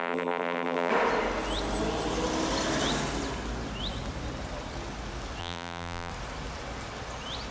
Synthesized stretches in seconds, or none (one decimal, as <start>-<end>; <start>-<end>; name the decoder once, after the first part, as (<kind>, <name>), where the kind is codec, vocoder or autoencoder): 0.0-0.9 (vocoder, BigVGAN v2); 5.4-6.1